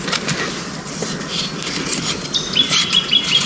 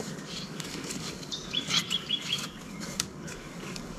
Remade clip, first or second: second